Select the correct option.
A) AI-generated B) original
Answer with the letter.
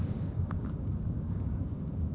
A